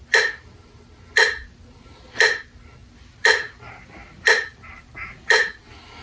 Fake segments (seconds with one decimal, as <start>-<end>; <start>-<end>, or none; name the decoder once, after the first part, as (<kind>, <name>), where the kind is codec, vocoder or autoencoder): none